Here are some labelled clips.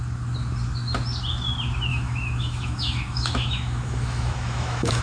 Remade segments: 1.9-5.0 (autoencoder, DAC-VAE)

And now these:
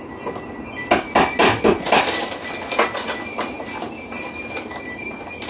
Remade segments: none

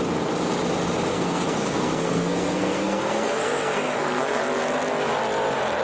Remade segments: 1.1-4.4 (codec, SNAC)

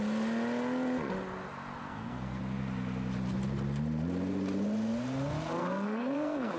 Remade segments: 1.8-2.4 (codec, SNAC); 5.6-6.6